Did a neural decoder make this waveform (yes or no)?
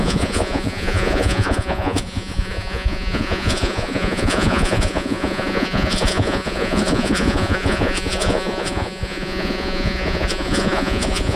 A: yes